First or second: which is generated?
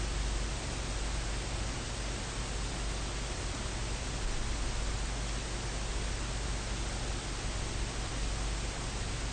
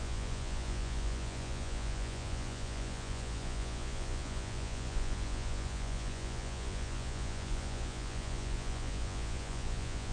second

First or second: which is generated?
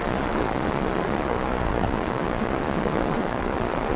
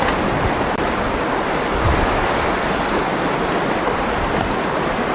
first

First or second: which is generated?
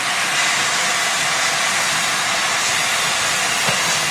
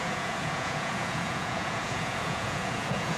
second